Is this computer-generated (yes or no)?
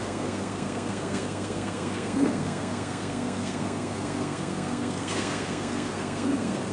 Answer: yes